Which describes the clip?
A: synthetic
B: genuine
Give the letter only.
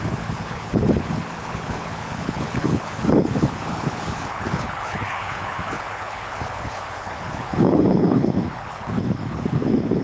A